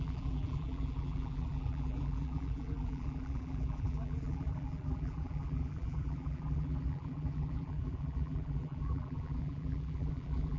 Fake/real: fake